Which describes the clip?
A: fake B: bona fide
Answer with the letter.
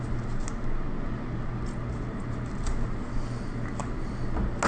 B